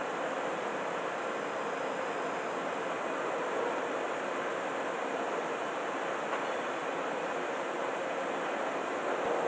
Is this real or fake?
real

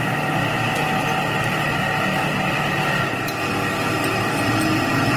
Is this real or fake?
real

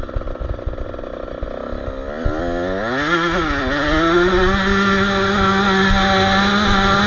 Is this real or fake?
real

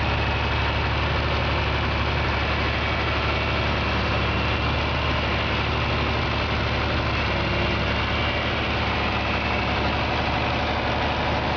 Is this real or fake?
real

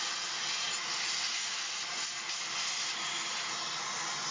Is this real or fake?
real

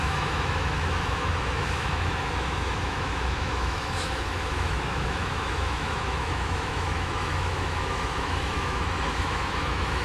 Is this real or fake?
fake